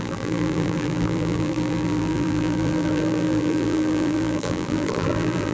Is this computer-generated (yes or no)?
yes